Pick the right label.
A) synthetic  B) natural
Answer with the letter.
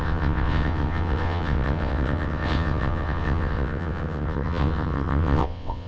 A